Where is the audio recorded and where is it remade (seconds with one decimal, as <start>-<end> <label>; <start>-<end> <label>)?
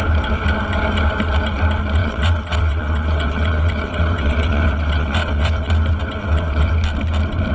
0.0-2.0 recorded; 2.0-5.7 remade; 5.7-6.2 recorded; 6.2-6.7 remade; 6.7-7.5 recorded